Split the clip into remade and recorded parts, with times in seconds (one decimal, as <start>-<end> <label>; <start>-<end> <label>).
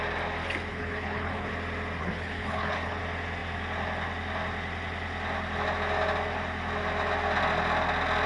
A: 0.0-0.7 recorded; 0.7-1.5 remade; 1.5-2.0 recorded; 2.0-3.0 remade; 3.0-8.3 recorded